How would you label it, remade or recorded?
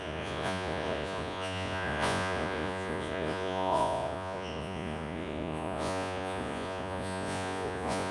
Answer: remade